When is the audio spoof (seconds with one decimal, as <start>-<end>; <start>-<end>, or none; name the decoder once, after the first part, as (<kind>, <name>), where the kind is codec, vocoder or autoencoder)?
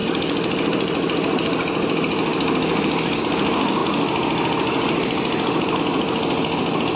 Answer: none